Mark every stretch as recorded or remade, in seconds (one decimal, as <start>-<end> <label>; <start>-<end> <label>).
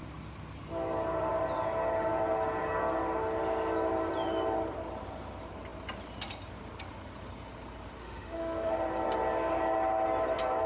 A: 0.0-8.0 recorded; 8.0-8.7 remade; 8.7-10.7 recorded